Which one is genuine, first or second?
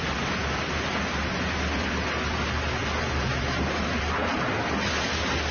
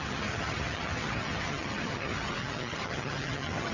first